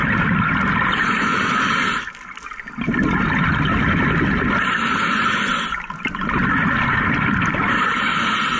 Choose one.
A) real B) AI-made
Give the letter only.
A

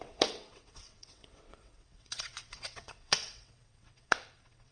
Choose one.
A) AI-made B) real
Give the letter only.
A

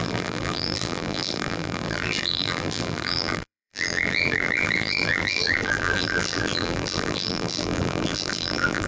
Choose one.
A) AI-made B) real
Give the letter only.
A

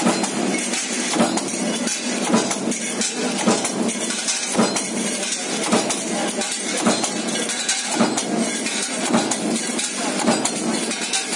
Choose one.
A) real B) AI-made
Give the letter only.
A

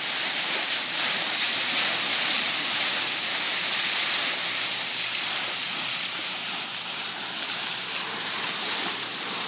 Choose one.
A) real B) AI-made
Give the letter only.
B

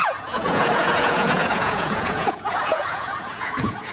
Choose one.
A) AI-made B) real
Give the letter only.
A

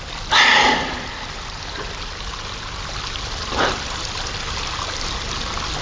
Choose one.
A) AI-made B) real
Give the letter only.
B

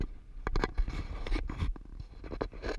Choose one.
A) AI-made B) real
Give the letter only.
B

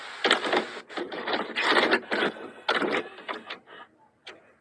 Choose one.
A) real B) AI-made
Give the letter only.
A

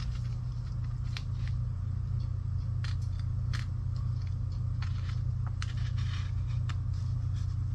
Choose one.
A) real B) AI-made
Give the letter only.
A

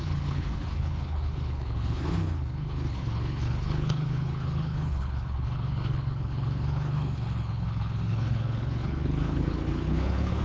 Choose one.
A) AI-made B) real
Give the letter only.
A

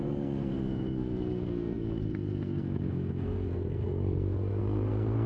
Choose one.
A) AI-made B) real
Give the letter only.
A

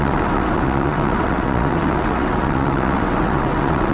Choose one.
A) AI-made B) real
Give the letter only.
A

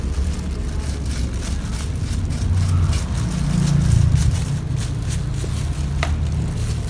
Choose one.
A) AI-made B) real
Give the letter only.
B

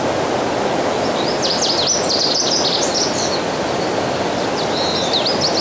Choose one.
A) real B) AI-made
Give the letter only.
A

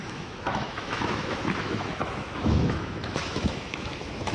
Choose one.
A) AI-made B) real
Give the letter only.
A